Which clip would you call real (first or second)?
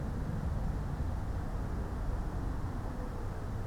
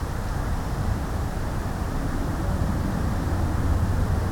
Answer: first